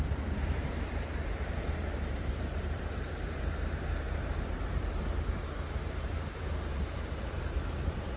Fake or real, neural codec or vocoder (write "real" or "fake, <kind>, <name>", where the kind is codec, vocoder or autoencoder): fake, vocoder, BigVGAN v2